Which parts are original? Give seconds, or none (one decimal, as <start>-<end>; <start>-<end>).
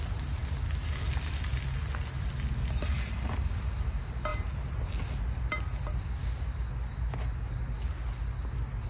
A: 0.0-8.9